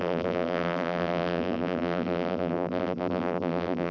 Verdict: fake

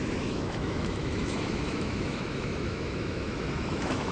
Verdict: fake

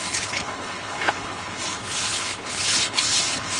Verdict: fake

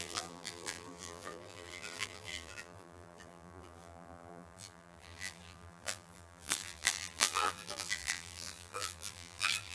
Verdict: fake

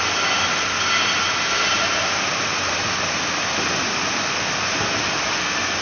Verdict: real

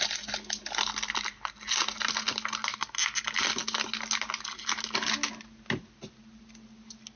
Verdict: real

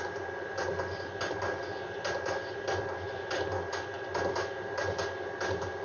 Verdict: real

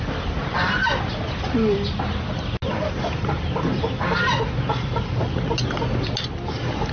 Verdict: real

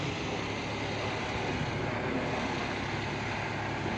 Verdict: real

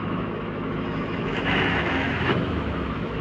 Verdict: fake